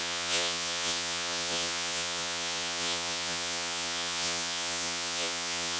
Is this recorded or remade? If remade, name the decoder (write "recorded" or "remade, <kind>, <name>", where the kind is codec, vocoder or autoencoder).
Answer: remade, vocoder, Vocos